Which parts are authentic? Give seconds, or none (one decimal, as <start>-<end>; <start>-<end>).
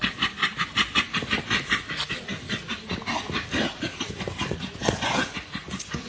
0.4-4.1